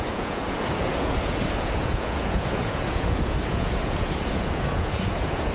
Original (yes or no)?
no